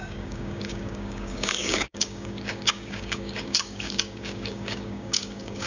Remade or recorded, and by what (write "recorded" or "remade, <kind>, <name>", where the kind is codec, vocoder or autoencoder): remade, codec, DAC